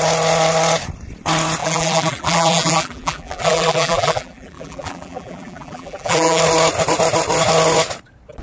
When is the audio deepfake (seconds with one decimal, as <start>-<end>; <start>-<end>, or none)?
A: 1.6-6.4